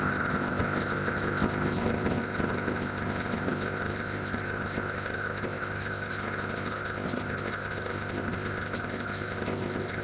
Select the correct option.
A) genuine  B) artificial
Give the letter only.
B